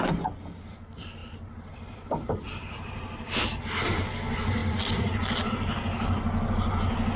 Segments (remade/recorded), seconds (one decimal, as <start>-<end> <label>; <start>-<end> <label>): 0.0-1.2 recorded; 1.2-3.6 remade; 3.6-4.6 recorded; 4.6-5.5 remade; 5.5-7.2 recorded